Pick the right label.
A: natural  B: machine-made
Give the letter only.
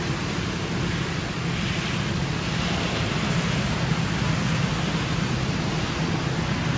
A